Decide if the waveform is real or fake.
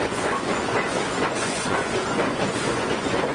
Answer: fake